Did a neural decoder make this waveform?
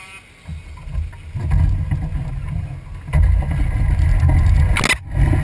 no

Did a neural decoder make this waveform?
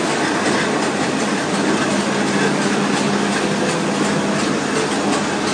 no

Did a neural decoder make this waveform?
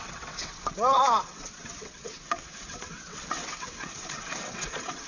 yes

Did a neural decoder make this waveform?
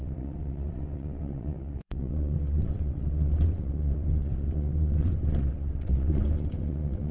yes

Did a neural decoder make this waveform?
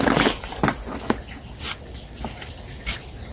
no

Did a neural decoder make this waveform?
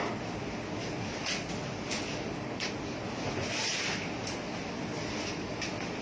no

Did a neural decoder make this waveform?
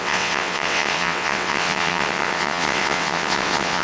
yes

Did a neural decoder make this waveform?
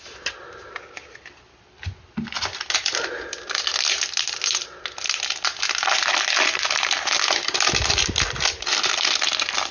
no